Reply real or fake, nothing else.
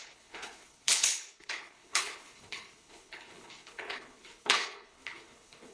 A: fake